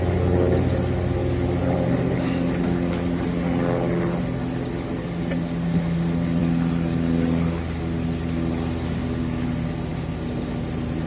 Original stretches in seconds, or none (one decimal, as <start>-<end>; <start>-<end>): 0.0-11.1